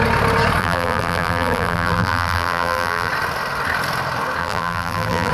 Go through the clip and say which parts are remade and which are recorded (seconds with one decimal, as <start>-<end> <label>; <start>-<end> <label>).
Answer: 0.0-0.6 recorded; 0.6-3.1 remade; 3.1-4.4 recorded; 4.4-5.3 remade